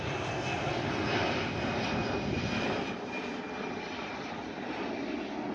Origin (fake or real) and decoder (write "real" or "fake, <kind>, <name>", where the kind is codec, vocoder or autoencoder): real